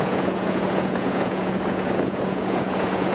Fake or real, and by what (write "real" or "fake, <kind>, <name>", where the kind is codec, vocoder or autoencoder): fake, vocoder, Vocos